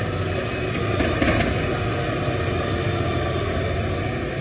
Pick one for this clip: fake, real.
real